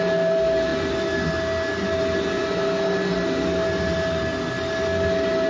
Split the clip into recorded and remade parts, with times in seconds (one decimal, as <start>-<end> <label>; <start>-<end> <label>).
0.0-5.5 recorded